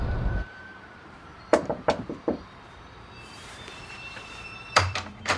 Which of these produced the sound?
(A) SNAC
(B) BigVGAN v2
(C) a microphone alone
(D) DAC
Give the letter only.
B